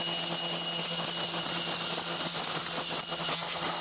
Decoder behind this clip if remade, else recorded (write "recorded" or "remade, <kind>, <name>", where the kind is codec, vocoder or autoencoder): recorded